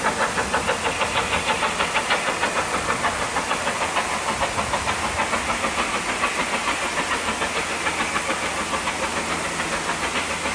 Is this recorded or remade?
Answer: recorded